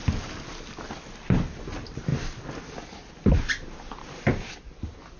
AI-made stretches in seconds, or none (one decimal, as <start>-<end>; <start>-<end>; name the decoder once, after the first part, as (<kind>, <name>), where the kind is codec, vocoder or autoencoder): none